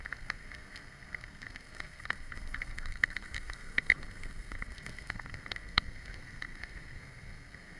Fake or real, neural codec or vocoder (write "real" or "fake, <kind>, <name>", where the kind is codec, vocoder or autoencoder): fake, codec, SNAC